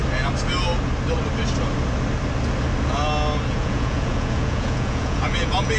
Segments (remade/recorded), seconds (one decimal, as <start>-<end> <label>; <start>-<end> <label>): 0.0-3.5 recorded; 3.5-5.8 remade